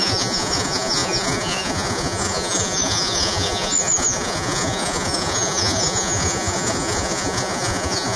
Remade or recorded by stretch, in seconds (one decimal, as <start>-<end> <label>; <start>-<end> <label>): 0.0-8.2 remade